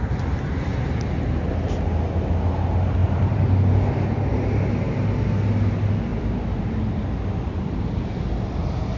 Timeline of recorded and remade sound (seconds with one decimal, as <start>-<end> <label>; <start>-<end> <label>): 0.0-3.0 recorded; 3.0-3.6 remade; 3.6-6.1 recorded; 6.1-9.0 remade